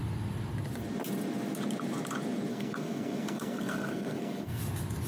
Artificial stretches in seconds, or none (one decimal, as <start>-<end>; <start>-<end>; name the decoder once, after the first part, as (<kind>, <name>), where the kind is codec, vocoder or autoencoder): 2.5-4.6 (codec, SNAC)